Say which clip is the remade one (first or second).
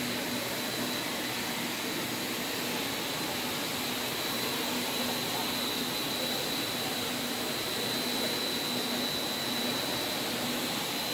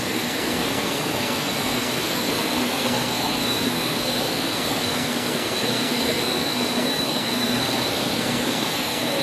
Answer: second